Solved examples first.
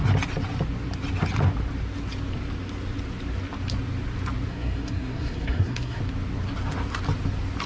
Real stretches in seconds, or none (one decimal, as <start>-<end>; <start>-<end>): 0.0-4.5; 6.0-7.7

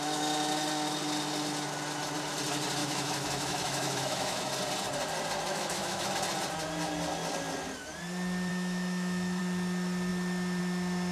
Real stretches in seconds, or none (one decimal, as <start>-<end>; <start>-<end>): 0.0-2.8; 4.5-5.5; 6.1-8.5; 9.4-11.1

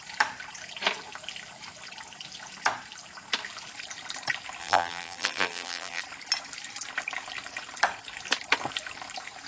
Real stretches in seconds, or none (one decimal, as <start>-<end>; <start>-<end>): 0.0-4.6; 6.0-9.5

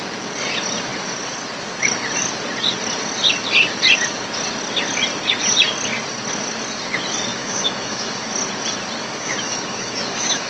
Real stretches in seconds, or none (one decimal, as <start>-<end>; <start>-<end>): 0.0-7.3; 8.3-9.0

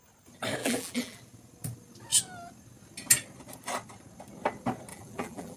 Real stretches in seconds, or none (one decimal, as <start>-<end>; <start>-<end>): 0.0-0.6; 1.2-4.9

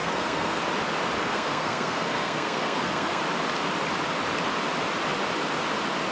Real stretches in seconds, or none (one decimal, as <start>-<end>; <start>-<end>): 0.6-1.2; 3.2-6.1

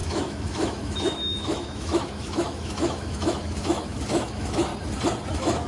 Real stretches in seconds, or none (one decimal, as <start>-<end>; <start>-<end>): 4.7-5.3